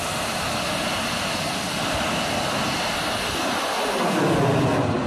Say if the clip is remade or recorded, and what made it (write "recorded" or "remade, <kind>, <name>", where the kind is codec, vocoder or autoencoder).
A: recorded